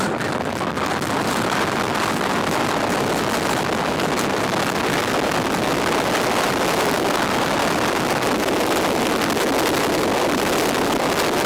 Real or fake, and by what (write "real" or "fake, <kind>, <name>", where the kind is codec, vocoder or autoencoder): real